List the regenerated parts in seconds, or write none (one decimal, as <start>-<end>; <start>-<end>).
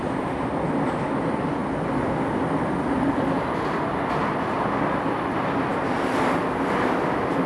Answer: none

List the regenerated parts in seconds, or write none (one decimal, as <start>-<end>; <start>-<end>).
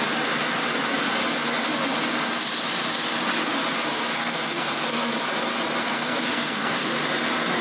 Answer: 4.2-5.1; 5.8-6.9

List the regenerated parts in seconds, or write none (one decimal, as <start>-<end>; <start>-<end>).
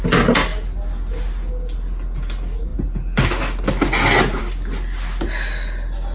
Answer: none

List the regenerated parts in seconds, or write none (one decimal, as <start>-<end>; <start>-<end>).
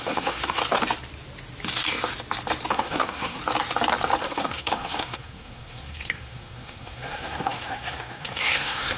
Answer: 0.0-0.6; 2.7-3.4; 4.2-9.0